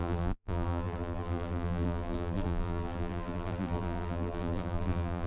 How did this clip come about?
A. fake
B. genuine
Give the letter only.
A